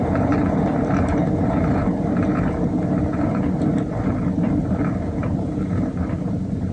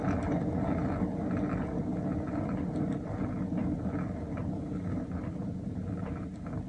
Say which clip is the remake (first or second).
first